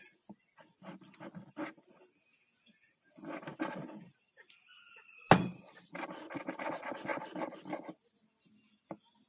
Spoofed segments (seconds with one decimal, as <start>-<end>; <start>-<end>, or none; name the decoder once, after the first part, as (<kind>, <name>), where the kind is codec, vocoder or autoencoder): none